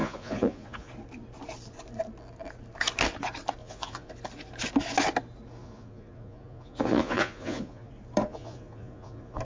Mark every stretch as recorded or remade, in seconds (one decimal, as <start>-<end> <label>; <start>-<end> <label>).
0.0-0.9 remade; 0.9-3.6 recorded; 3.6-4.1 remade; 4.1-5.6 recorded; 5.6-7.9 remade; 7.9-8.3 recorded; 8.3-9.4 remade